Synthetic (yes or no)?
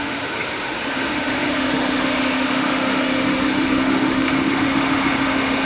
yes